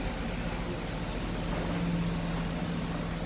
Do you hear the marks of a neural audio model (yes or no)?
no